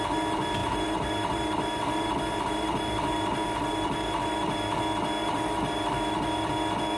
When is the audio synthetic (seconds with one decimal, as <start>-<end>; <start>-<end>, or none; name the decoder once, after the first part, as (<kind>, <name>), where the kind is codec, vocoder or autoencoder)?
0.6-4.8 (vocoder, BigVGAN v2); 5.2-6.5